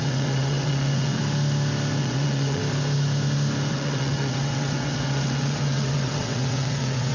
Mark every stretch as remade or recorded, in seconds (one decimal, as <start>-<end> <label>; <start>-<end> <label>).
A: 0.0-1.2 remade; 1.2-2.0 recorded; 2.0-2.6 remade; 2.6-3.7 recorded; 3.7-7.1 remade